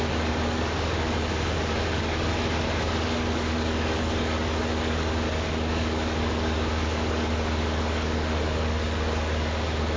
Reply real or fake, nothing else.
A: fake